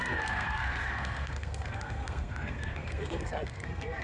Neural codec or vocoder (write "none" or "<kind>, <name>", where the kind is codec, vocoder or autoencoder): codec, SNAC